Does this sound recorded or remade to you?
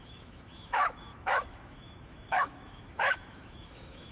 remade